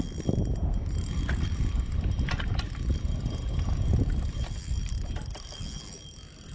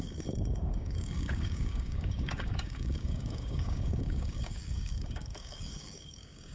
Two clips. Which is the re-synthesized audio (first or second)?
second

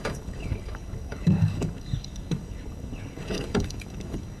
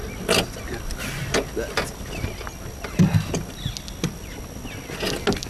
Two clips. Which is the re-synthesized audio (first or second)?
first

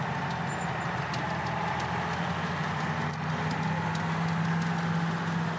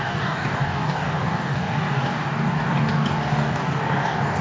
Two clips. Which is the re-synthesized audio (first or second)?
second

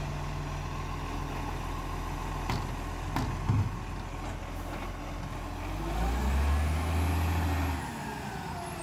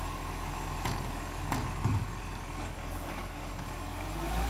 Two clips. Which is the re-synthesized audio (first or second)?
second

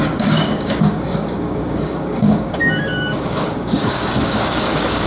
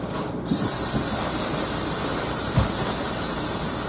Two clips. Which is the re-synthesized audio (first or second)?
first